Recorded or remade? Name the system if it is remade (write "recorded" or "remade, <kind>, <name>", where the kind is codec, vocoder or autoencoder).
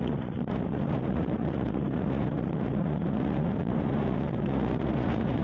remade, vocoder, Vocos